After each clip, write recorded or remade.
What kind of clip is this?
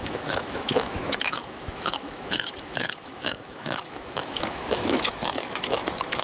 remade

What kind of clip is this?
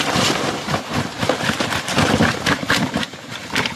remade